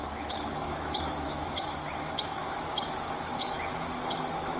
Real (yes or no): no